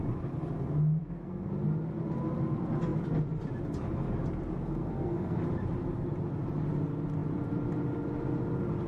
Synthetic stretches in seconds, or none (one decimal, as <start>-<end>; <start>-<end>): 1.0-1.5; 4.7-5.4